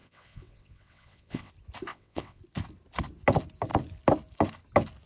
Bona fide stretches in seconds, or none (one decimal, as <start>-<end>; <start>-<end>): 1.5-1.9; 2.4-5.1